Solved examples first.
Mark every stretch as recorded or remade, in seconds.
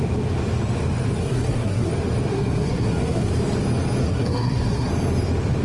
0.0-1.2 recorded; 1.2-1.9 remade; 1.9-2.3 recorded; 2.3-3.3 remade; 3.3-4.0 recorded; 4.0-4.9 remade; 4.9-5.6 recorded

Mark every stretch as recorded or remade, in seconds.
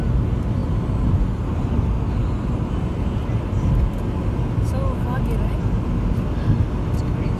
0.0-7.4 recorded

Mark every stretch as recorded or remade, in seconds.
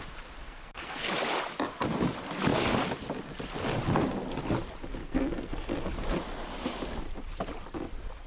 0.0-0.4 recorded; 0.4-1.1 remade; 1.1-5.0 recorded; 5.0-5.9 remade; 5.9-8.3 recorded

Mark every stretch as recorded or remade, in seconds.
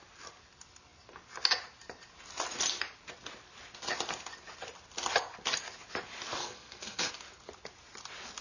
0.0-6.4 recorded; 6.4-7.1 remade; 7.1-8.4 recorded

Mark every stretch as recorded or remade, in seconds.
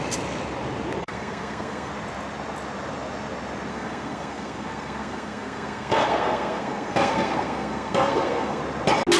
0.0-1.0 recorded; 1.0-1.9 remade; 1.9-3.7 recorded; 3.7-8.6 remade; 8.6-9.2 recorded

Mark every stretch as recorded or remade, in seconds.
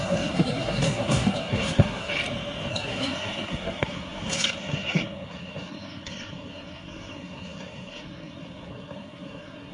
0.0-2.1 remade; 2.1-2.7 recorded; 2.7-9.7 remade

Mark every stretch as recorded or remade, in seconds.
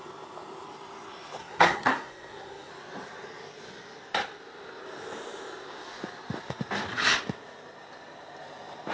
0.0-1.4 recorded; 1.4-2.7 remade; 2.7-8.9 recorded